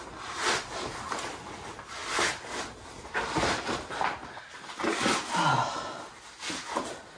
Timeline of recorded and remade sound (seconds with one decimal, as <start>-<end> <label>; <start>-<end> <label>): 0.0-7.2 recorded